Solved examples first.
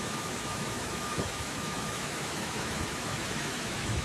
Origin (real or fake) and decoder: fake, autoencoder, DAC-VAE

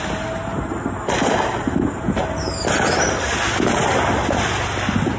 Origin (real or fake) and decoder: real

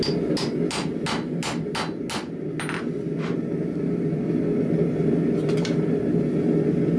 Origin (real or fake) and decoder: real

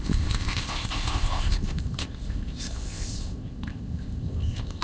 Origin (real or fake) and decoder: fake, codec, ZipCodec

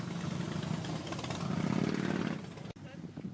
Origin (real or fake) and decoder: real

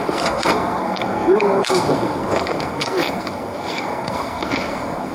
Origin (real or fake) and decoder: fake, codec, SNAC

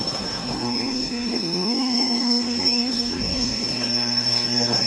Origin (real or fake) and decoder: fake, codec, SNAC